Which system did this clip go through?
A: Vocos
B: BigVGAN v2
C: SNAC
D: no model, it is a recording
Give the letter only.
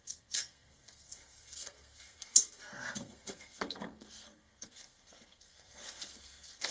C